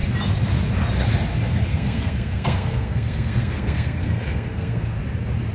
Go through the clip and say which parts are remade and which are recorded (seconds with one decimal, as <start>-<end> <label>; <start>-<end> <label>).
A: 0.0-1.7 recorded; 1.7-5.0 remade; 5.0-5.5 recorded

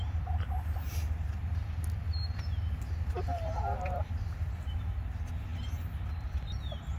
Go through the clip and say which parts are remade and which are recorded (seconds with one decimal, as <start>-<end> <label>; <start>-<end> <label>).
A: 0.0-7.0 recorded